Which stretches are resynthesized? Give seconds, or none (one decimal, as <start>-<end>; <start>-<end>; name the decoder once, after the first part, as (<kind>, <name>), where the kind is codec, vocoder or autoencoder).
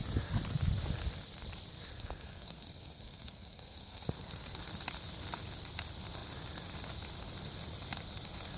1.9-4.6 (codec, SNAC)